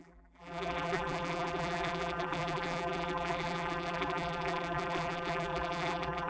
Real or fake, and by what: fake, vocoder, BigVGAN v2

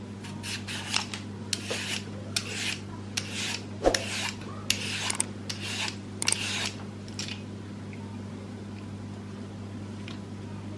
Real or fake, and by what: real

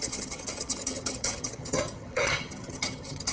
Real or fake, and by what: fake, vocoder, HiFi-GAN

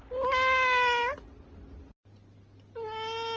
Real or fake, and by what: real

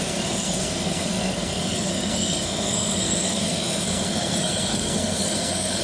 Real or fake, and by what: fake, codec, SNAC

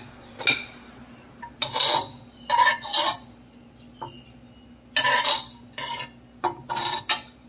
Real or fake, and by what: real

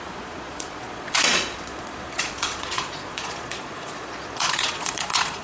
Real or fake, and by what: fake, vocoder, Vocos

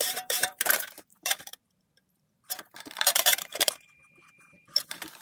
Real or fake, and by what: fake, vocoder, BigVGAN v2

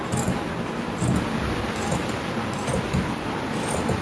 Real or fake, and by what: real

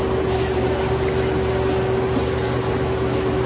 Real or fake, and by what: real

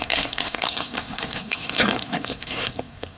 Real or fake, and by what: fake, codec, SNAC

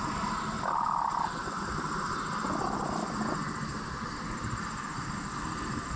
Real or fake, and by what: real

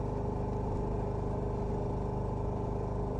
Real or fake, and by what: real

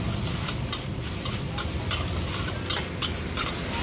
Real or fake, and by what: real